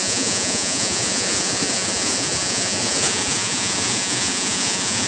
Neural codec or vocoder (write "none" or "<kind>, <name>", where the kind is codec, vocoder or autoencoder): vocoder, Vocos